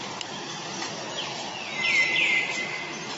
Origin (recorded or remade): recorded